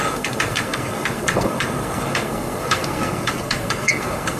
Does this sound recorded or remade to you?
remade